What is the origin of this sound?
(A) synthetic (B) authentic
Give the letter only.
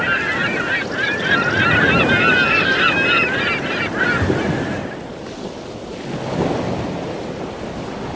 B